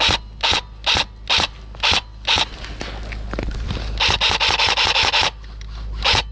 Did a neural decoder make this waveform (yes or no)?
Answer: no